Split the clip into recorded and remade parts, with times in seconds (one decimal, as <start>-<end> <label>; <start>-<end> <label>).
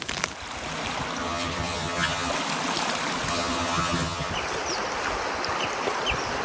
0.0-1.2 recorded; 1.2-2.3 remade; 2.3-3.3 recorded; 3.3-4.3 remade; 4.3-6.4 recorded